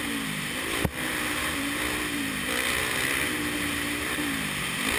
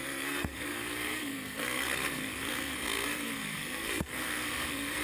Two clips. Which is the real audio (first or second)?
first